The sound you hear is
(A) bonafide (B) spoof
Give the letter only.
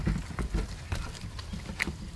A